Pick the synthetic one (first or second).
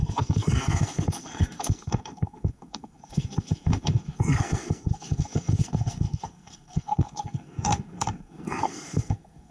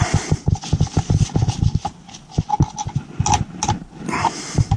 first